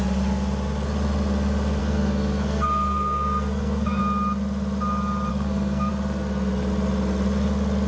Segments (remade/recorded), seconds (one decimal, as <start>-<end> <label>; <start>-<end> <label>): 0.0-1.8 recorded; 1.8-4.0 remade; 4.0-5.3 recorded; 5.3-5.9 remade; 5.9-7.9 recorded